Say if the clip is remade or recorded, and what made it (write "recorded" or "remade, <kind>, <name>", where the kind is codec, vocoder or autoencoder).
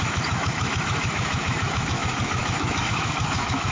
remade, autoencoder, DAC-VAE